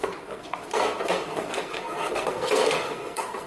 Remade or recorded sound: remade